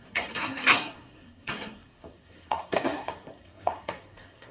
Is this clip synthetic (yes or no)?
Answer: yes